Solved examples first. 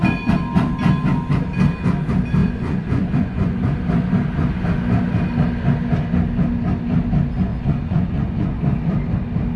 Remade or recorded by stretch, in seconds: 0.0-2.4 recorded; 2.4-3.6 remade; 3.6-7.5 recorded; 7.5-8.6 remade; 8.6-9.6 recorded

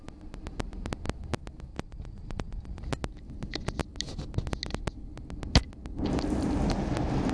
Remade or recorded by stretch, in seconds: 0.0-1.7 recorded; 1.7-2.8 remade; 2.8-7.3 recorded

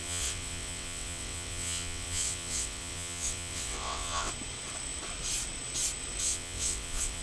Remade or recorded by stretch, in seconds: 0.0-4.3 remade; 4.3-6.2 recorded; 6.2-7.2 remade